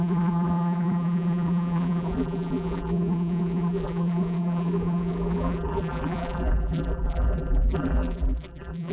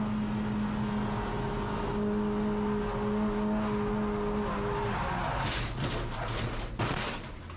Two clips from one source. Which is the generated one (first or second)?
first